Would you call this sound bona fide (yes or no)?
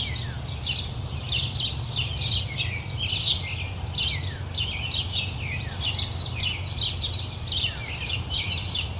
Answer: yes